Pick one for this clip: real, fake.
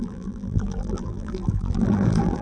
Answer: fake